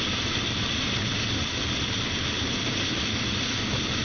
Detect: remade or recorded recorded